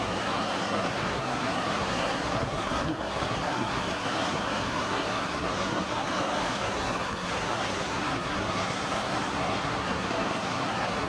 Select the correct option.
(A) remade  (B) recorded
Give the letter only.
A